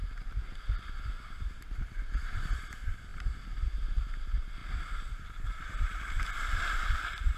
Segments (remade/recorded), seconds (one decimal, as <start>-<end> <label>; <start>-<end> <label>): 0.0-7.4 recorded